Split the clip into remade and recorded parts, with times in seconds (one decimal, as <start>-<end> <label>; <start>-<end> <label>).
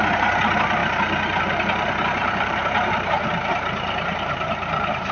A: 0.0-2.2 recorded; 2.2-5.1 remade